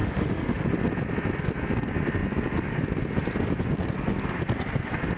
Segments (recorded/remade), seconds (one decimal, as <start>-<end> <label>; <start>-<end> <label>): 0.0-0.7 remade; 0.7-5.2 recorded